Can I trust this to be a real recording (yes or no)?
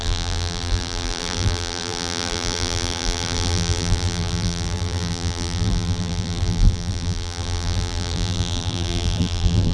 no